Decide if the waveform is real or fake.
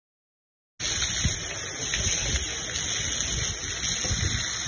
real